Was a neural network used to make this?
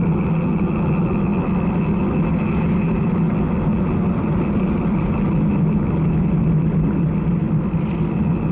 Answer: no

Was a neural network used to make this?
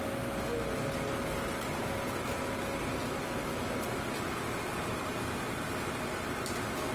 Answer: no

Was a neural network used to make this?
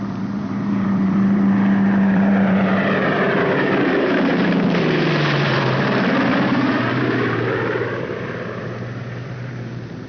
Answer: yes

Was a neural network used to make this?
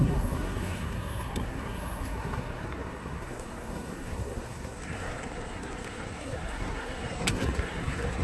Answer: yes